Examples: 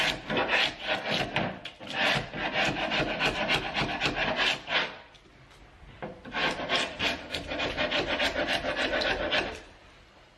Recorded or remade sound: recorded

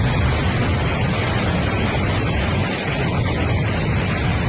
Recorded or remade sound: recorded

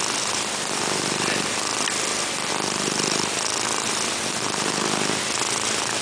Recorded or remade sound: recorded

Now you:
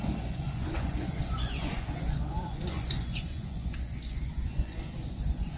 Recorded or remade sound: remade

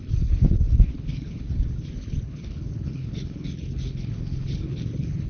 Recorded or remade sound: remade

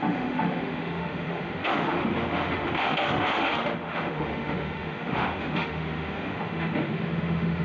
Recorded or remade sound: remade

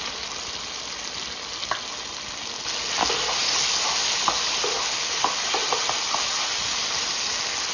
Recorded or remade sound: recorded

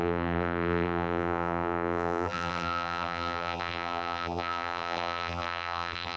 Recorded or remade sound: remade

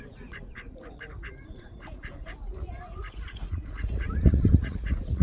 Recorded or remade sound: remade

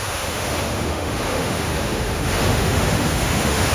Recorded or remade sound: remade